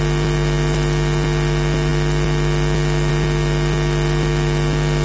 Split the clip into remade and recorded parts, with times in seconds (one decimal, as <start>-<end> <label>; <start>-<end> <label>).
0.0-5.0 recorded

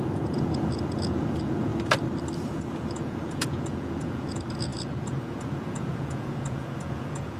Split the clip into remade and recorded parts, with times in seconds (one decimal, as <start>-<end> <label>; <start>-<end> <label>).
0.0-1.7 remade; 1.7-2.5 recorded; 2.5-7.4 remade

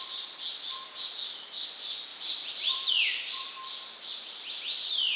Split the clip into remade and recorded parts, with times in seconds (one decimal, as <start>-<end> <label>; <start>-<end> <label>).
0.0-2.1 recorded; 2.1-2.9 remade; 2.9-5.2 recorded

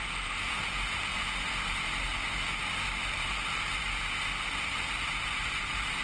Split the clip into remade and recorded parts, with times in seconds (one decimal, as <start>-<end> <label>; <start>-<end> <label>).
0.0-1.1 remade; 1.1-1.7 recorded; 1.7-2.1 remade; 2.1-3.1 recorded; 3.1-3.8 remade; 3.8-4.7 recorded; 4.7-6.0 remade

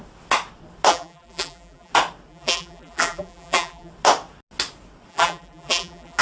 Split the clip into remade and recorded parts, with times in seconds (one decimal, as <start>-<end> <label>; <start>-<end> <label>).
0.0-0.9 recorded; 0.9-1.9 remade; 1.9-2.3 recorded; 2.3-3.9 remade; 3.9-5.1 recorded; 5.1-6.2 remade